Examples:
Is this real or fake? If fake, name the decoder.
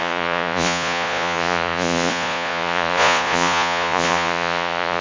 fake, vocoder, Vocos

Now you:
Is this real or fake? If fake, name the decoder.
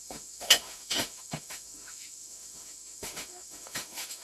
fake, autoencoder, DAC-VAE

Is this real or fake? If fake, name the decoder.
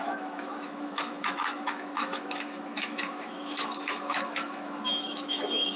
fake, autoencoder, DAC-VAE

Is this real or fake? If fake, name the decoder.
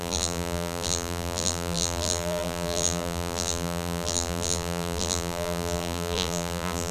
fake, vocoder, BigVGAN v2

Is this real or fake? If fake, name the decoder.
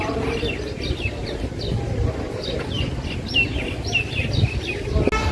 real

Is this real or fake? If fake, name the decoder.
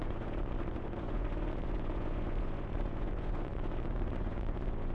fake, vocoder, Vocos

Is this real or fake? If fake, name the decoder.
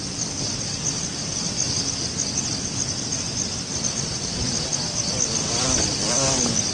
real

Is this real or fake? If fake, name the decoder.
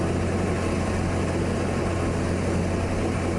real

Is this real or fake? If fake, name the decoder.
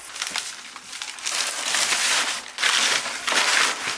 real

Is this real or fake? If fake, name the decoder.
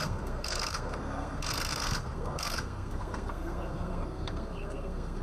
fake, codec, SNAC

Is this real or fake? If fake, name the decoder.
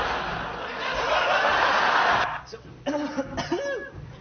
real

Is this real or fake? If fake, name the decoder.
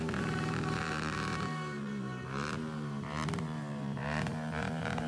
fake, vocoder, BigVGAN v2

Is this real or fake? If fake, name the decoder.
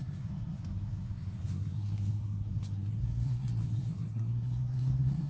fake, codec, SNAC